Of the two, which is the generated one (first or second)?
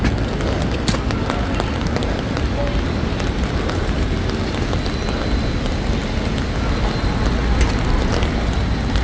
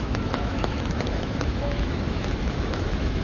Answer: second